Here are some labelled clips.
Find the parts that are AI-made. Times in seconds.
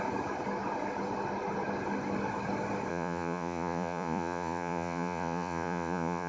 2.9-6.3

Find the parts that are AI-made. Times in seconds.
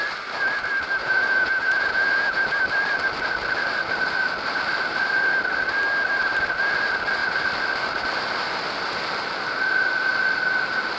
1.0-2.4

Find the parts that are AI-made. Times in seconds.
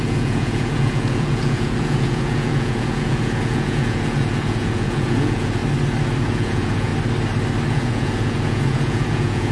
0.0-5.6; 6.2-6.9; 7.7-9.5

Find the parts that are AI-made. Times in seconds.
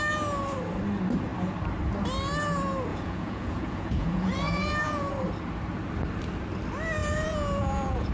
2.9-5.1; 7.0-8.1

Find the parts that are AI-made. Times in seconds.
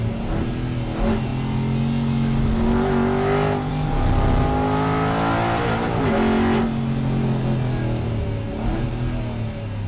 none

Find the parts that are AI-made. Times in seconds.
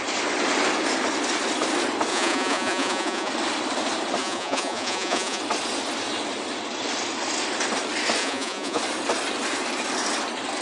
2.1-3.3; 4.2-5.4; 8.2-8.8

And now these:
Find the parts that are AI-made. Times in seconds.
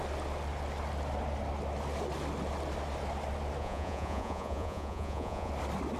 3.6-5.5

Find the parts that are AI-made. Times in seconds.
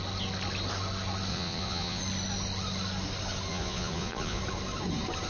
1.3-2.0; 3.5-4.4